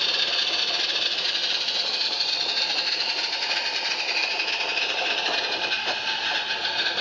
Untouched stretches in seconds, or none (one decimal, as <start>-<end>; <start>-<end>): 0.0-1.4; 3.5-4.2; 5.4-7.0